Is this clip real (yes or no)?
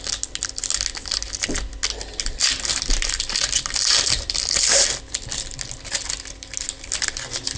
yes